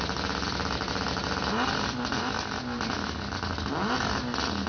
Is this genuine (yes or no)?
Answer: yes